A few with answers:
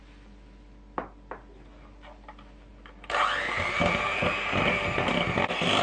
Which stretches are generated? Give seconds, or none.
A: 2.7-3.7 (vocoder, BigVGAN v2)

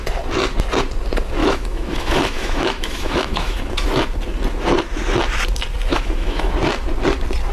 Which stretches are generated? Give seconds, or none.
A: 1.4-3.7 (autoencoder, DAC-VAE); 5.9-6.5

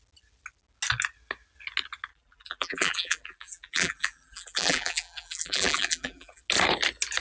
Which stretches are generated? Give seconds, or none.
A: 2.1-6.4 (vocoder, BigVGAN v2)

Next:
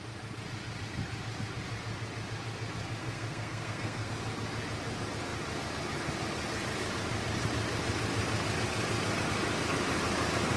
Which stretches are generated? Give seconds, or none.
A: 3.0-4.1 (codec, SNAC)

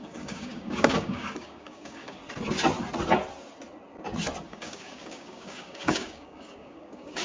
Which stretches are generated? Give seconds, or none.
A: 0.0-2.2 (codec, DAC); 4.5-7.2